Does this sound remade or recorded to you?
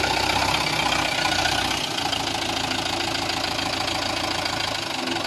recorded